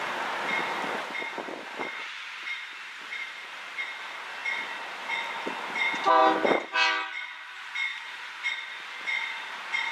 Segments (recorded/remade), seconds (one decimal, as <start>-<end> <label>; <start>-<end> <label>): 0.0-2.0 recorded; 2.0-2.6 remade; 2.6-7.9 recorded; 7.9-8.5 remade; 8.5-9.9 recorded